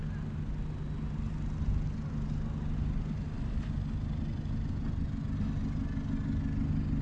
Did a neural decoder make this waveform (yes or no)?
no